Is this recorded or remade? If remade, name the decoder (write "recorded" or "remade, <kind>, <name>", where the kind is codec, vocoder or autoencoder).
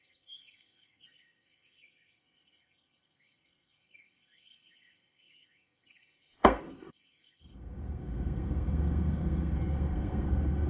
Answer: remade, codec, SNAC